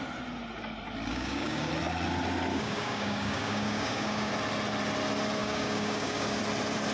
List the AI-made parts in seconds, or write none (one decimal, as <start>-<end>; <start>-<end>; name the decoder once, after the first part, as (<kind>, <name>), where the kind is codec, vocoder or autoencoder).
1.1-1.7 (codec, DAC); 2.5-4.3; 5.4-6.4